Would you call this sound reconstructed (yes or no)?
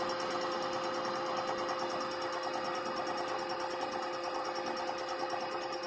no